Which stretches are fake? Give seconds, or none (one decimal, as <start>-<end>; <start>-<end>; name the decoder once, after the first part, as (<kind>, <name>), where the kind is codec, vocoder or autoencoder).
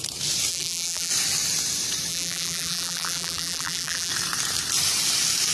0.5-1.1 (vocoder, BigVGAN v2); 2.1-4.1